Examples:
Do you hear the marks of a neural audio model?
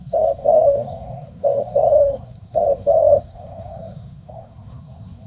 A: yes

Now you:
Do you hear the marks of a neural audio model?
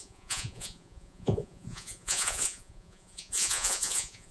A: yes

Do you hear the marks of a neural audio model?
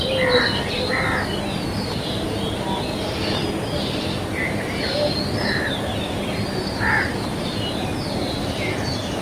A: no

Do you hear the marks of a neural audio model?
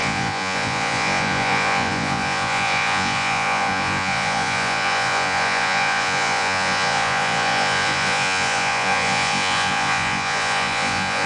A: yes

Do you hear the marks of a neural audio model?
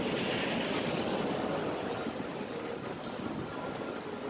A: no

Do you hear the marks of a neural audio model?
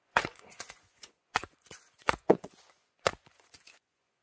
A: yes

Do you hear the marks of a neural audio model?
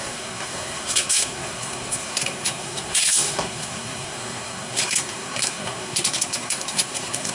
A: yes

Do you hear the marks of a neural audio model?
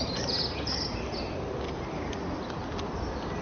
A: no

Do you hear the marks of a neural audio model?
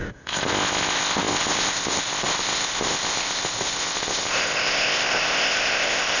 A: yes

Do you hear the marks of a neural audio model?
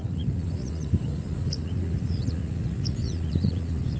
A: yes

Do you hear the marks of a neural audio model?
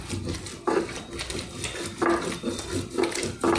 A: no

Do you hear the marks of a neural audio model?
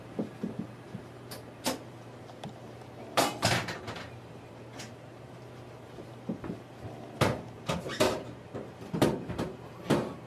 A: yes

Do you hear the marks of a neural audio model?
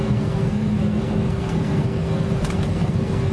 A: yes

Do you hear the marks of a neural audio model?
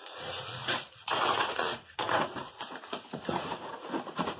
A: yes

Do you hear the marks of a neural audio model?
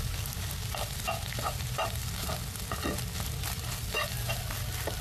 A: no